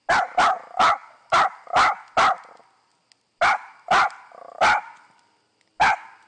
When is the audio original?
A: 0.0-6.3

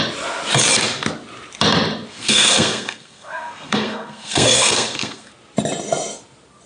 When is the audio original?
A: 0.0-2.1; 5.3-6.7

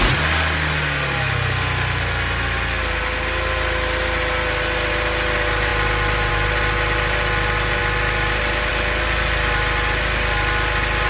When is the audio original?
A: 0.0-11.1

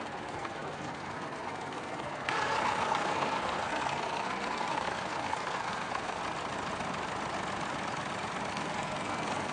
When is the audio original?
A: 6.2-8.5

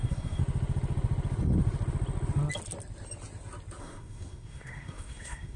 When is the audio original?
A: 0.4-3.8

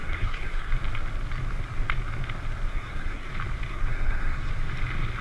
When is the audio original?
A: 0.7-2.7; 3.3-3.7; 4.5-5.2